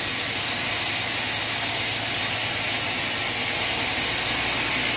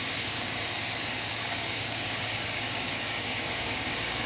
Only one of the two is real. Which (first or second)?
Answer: first